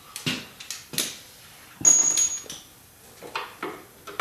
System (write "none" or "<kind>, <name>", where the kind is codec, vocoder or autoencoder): none